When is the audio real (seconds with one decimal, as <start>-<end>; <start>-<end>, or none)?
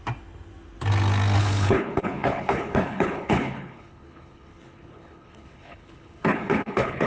0.0-1.4